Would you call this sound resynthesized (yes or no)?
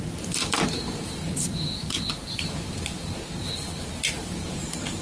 yes